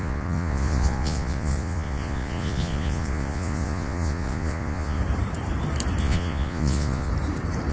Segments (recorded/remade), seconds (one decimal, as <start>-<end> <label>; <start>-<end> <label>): 0.0-5.0 remade; 5.0-6.0 recorded; 6.0-7.1 remade; 7.1-7.7 recorded